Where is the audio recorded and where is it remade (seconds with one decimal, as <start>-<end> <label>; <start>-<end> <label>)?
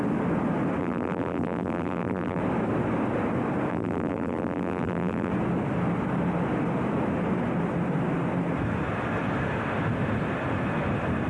0.0-0.8 recorded; 0.8-2.4 remade; 2.4-3.7 recorded; 3.7-5.3 remade; 5.3-11.3 recorded